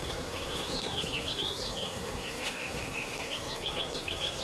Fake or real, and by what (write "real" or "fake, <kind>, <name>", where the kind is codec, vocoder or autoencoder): fake, codec, SNAC